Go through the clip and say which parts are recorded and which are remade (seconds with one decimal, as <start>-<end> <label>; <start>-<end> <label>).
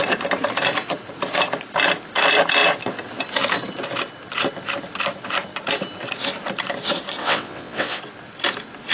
0.0-7.2 recorded; 7.2-8.0 remade; 8.0-8.9 recorded